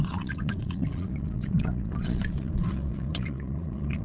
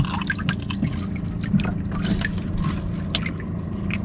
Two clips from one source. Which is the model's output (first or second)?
first